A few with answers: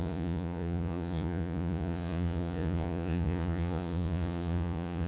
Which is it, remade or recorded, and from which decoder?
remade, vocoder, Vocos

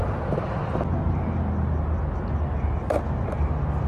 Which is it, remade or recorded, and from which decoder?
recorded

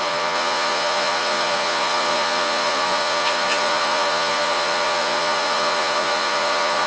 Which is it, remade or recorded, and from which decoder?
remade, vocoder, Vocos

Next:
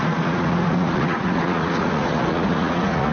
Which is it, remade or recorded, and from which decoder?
remade, vocoder, Vocos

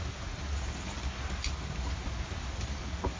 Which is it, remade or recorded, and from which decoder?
recorded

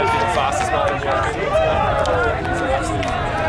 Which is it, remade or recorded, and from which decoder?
recorded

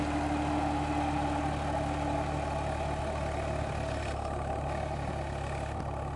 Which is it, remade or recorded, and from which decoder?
recorded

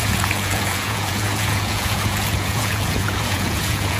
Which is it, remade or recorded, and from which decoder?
remade, vocoder, Vocos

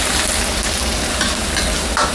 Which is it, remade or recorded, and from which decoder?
recorded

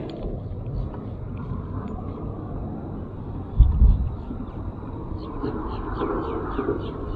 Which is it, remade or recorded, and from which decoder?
recorded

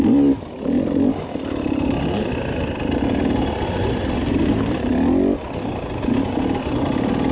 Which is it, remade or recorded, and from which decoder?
recorded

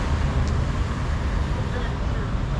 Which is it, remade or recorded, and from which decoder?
recorded